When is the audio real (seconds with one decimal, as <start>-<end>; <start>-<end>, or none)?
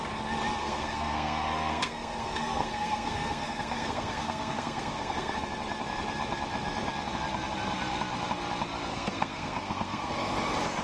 0.0-0.6; 5.4-8.9; 10.1-10.8